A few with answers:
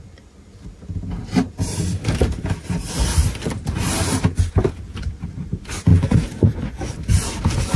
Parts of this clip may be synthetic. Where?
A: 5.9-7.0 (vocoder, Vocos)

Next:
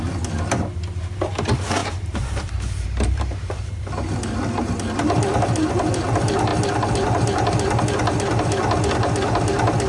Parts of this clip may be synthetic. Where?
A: 1.8-3.8 (vocoder, BigVGAN v2)

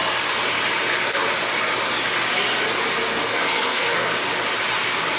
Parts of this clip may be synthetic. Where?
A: 3.2-4.1 (codec, SNAC)

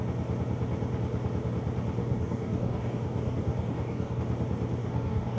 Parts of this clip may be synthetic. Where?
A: 2.0-4.2 (codec, DAC); 4.8-5.4

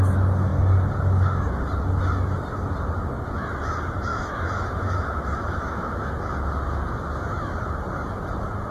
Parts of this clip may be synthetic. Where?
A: 4.1-6.1 (autoencoder, DAC-VAE)